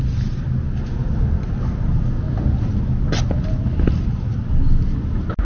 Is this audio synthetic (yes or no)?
no